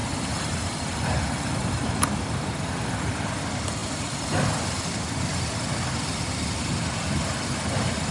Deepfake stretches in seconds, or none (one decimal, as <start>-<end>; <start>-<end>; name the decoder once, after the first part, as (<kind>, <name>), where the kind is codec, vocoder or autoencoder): none

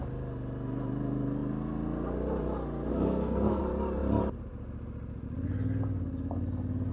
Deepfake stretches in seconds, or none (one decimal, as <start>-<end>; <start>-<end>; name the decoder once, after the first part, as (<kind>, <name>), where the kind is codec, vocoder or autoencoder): 2.9-3.6 (codec, SNAC)

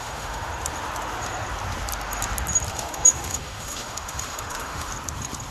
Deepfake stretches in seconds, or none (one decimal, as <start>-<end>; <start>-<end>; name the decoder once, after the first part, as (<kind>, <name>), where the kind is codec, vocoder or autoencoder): 0.0-0.5 (autoencoder, DAC-VAE); 2.7-4.9

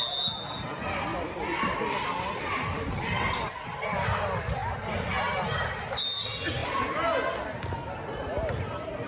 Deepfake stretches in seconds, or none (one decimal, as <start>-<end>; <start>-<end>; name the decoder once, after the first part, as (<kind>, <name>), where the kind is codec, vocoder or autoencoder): 1.1-4.0 (vocoder, BigVGAN v2); 4.6-5.2

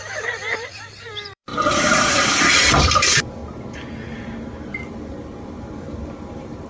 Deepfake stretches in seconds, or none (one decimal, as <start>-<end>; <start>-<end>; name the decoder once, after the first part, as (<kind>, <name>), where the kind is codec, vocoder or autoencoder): 0.0-3.4 (vocoder, BigVGAN v2); 5.6-6.7